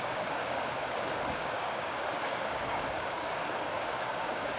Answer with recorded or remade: remade